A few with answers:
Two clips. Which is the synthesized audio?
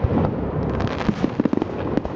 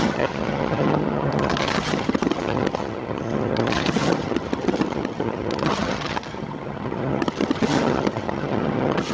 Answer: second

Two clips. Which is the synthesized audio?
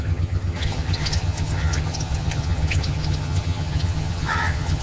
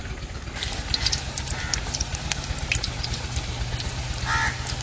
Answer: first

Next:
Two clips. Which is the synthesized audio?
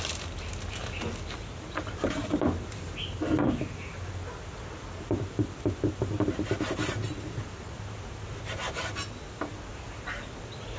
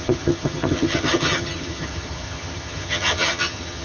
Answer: second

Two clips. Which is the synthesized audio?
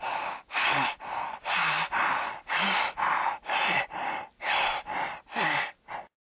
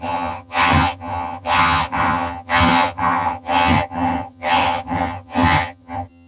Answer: second